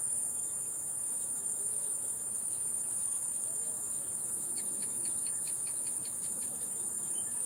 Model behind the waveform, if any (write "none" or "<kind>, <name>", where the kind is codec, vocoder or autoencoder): autoencoder, DAC-VAE